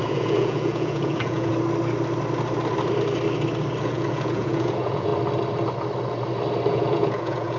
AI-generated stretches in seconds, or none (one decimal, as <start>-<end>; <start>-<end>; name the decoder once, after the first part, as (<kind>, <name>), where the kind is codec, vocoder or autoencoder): 0.0-1.5 (vocoder, Vocos); 3.8-5.1; 6.7-7.6